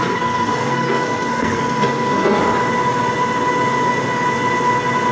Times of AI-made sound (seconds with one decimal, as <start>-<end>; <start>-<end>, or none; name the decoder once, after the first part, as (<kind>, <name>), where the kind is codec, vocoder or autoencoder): 0.0-2.4 (codec, SNAC)